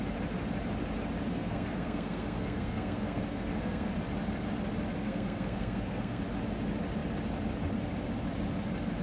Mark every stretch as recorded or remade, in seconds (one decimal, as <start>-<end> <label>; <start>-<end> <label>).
0.0-1.3 recorded; 1.3-3.9 remade; 3.9-5.0 recorded; 5.0-6.2 remade; 6.2-9.0 recorded